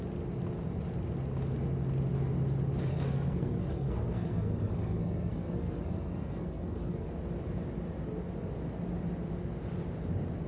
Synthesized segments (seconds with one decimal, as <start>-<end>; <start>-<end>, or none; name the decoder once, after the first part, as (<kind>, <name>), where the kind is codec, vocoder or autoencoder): 2.9-7.1 (codec, SNAC)